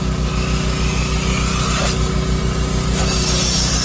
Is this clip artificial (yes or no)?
no